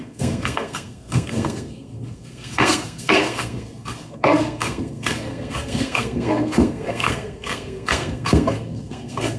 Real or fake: fake